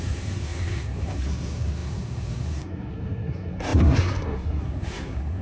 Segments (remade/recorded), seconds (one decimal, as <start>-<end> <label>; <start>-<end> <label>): 0.0-5.4 remade